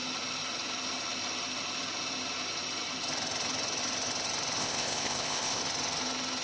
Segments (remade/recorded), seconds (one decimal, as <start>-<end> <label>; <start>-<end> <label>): 0.0-4.6 recorded; 4.6-5.6 remade; 5.6-6.4 recorded